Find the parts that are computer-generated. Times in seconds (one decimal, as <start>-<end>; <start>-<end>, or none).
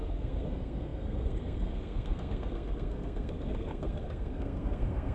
0.0-5.1